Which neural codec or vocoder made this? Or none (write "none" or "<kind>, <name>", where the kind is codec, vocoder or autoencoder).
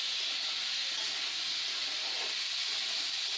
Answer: none